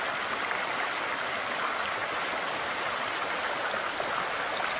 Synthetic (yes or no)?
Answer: no